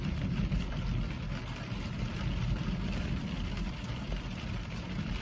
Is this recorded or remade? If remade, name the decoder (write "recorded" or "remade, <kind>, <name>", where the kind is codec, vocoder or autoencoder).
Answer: remade, vocoder, BigVGAN v2